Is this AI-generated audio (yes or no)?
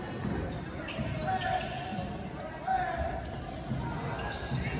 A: no